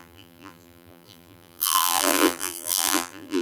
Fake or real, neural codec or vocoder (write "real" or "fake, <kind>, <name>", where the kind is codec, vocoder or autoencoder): fake, vocoder, BigVGAN v2